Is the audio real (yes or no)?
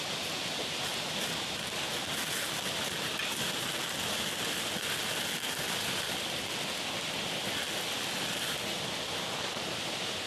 yes